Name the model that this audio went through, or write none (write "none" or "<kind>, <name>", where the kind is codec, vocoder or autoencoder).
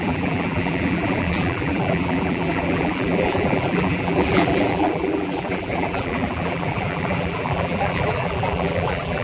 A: vocoder, BigVGAN v2